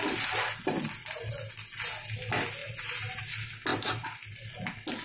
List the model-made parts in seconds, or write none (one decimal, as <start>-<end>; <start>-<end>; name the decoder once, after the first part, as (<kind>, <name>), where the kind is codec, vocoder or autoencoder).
1.0-1.5 (vocoder, BigVGAN v2); 2.6-3.2; 3.7-4.5